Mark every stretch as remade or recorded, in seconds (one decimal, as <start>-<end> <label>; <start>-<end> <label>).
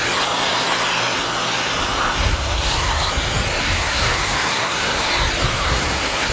0.0-2.3 recorded; 2.3-3.1 remade; 3.1-3.6 recorded; 3.6-5.1 remade; 5.1-5.5 recorded; 5.5-6.3 remade